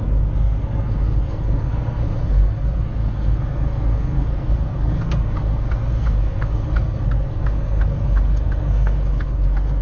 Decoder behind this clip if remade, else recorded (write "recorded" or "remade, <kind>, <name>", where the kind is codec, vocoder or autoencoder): remade, codec, SNAC